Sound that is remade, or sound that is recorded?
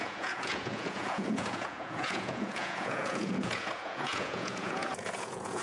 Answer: remade